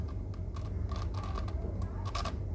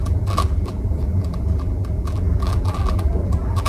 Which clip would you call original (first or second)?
first